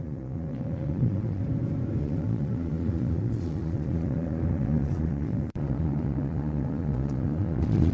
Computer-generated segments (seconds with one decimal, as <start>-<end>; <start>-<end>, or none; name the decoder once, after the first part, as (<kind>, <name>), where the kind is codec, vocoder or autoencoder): 0.0-1.4 (vocoder, Vocos); 2.0-7.9